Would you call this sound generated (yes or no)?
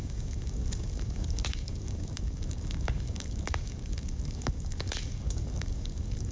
yes